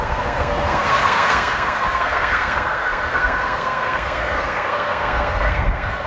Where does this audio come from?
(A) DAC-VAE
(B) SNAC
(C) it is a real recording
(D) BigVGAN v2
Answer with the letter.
B